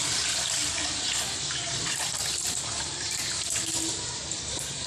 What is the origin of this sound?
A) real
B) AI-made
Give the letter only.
A